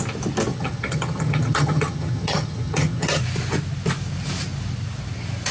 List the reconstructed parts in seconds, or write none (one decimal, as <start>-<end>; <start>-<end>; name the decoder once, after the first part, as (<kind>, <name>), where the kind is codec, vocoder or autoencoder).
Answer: 0.5-3.2 (vocoder, HiFi-GAN)